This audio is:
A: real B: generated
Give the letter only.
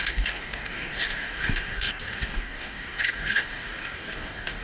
B